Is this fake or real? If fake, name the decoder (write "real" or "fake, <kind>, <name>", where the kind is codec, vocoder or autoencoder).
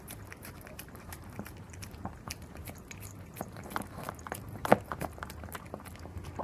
fake, vocoder, BigVGAN v2